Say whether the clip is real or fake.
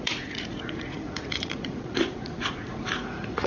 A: fake